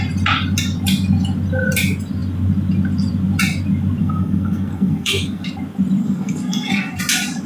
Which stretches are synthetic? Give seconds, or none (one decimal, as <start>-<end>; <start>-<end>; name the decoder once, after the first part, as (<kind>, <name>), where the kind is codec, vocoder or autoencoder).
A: 4.0-5.5 (codec, SNAC); 6.0-7.0